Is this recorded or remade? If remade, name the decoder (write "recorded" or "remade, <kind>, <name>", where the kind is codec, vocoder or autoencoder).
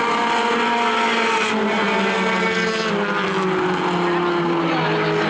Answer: recorded